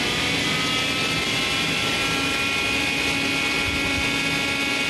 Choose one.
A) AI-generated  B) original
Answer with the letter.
B